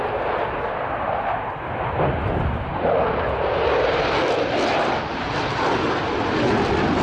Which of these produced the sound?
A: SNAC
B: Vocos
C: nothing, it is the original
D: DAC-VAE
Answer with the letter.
C